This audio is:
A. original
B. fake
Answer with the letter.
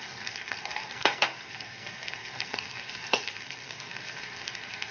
B